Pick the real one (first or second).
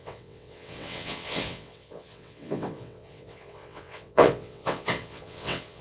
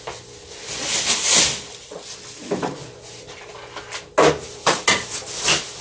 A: second